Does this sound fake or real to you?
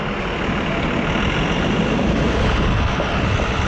real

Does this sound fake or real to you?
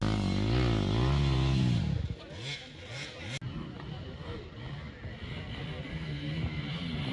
real